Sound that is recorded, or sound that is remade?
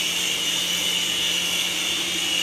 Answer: recorded